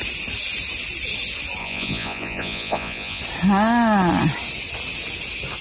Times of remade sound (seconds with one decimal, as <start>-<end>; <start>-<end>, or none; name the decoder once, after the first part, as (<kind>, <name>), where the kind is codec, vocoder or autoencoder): 1.6-3.2 (vocoder, Vocos)